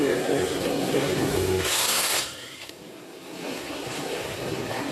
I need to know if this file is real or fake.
fake